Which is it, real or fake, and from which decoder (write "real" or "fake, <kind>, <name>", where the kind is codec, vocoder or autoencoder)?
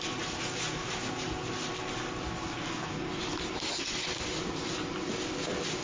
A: real